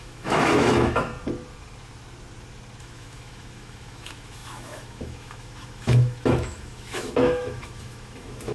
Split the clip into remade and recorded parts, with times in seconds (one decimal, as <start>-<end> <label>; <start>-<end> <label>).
0.0-1.1 remade; 1.1-2.8 recorded; 2.8-8.5 remade